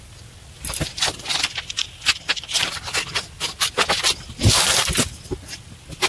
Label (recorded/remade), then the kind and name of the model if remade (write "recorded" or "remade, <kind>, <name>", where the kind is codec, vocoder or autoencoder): recorded